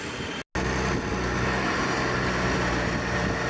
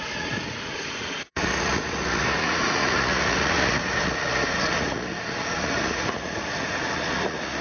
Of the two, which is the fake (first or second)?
second